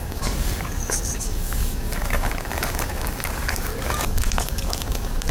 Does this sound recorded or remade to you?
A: remade